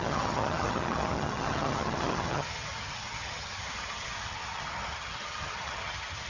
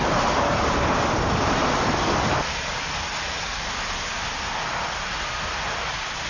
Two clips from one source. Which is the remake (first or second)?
first